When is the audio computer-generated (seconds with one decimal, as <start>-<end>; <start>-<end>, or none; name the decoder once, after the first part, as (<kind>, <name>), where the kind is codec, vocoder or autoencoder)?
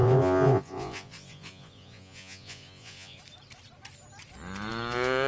0.0-3.2 (vocoder, Vocos)